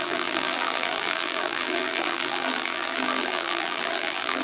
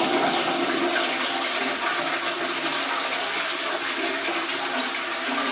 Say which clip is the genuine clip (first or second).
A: second